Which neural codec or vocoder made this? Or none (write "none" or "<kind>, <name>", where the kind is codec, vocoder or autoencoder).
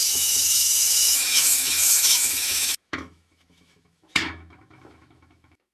autoencoder, DAC-VAE